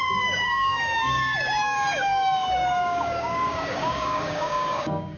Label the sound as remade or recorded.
remade